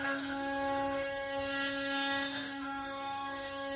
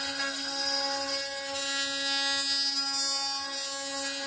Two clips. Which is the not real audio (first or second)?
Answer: first